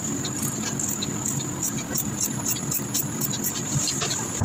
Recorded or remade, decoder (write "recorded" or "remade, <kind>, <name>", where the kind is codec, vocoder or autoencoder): recorded